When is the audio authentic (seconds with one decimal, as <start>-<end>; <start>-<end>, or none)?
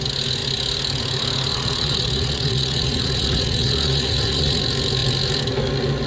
0.0-1.5; 4.6-6.1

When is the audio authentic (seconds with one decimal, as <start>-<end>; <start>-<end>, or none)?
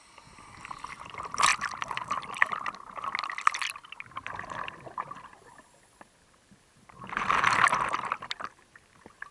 0.0-9.3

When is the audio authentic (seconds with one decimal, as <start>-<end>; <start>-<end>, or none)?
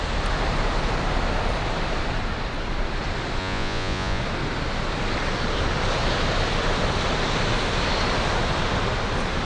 0.0-3.4; 4.2-9.4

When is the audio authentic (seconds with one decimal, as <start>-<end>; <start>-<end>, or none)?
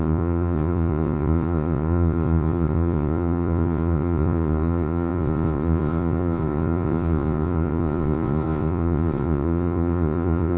none